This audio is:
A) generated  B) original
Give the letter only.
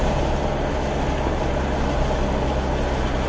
B